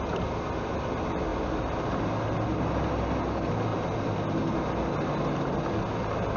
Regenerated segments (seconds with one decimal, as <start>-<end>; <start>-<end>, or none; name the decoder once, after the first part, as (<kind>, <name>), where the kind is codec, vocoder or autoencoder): none